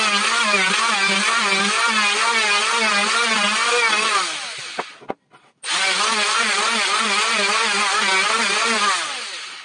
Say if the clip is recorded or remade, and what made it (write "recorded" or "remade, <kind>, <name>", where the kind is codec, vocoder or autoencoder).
recorded